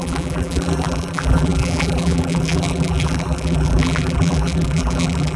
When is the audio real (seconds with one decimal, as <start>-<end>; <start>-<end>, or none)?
none